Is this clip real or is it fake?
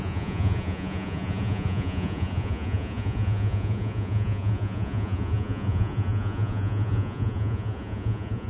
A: fake